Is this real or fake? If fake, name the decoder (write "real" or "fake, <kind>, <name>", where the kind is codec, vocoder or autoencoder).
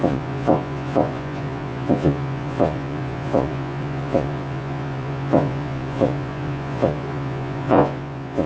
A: fake, vocoder, Vocos